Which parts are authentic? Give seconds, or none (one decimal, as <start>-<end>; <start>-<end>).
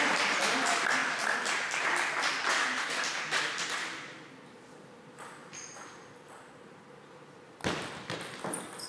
0.0-8.9